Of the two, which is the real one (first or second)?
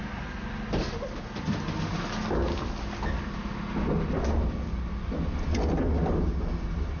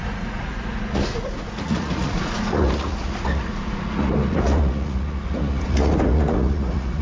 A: first